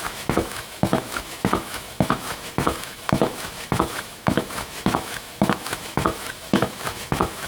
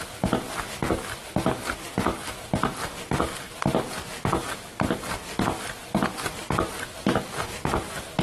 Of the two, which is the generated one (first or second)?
first